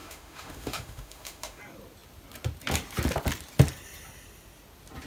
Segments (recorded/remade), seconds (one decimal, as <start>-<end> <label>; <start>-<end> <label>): 0.0-1.6 remade; 1.6-5.1 recorded